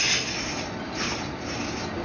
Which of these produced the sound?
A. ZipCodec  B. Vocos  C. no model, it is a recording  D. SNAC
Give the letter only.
C